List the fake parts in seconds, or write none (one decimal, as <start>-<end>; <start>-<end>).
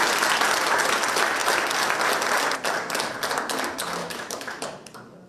4.0-4.6